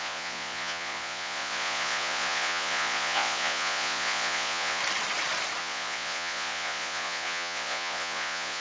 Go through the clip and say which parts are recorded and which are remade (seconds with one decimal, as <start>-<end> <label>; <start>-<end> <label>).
0.0-4.8 remade; 4.8-5.6 recorded; 5.6-8.6 remade